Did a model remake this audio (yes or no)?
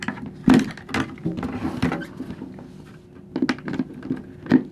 no